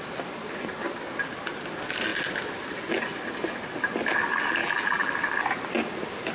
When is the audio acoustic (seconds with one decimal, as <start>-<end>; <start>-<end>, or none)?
0.0-4.6; 5.1-6.3